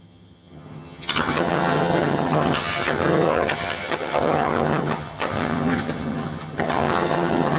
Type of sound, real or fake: fake